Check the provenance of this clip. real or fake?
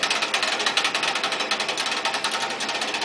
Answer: real